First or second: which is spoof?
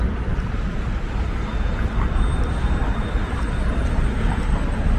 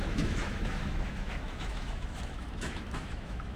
second